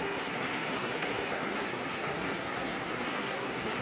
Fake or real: fake